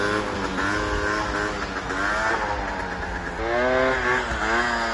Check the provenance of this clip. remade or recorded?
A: recorded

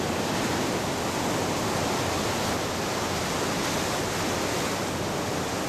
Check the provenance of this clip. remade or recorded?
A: recorded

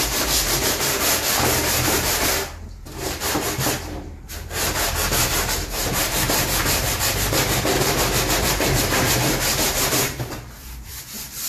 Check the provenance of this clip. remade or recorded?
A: remade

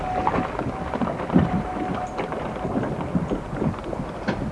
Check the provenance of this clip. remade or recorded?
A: recorded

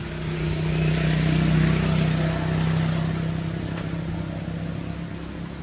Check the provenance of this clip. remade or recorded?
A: recorded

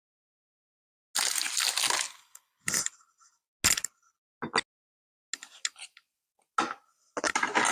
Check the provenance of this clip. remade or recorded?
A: recorded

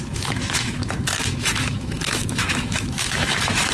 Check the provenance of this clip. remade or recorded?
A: remade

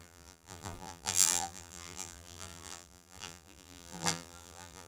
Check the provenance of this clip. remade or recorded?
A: remade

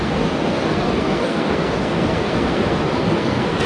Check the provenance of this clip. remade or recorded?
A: remade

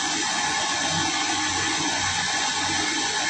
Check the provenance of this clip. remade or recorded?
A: remade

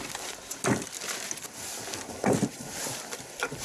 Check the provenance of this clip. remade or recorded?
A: recorded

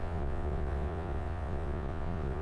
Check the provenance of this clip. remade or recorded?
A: remade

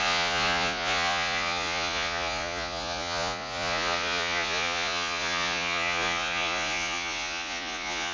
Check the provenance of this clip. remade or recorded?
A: remade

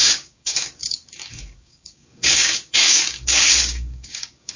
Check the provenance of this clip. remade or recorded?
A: remade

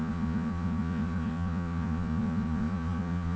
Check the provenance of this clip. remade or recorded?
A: remade